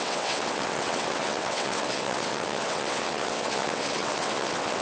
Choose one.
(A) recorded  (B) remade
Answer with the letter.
B